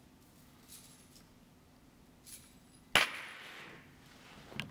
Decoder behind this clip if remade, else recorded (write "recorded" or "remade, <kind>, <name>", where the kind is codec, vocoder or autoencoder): recorded